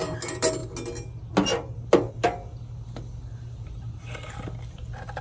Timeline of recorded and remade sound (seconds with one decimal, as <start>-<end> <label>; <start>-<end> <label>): 0.0-5.2 recorded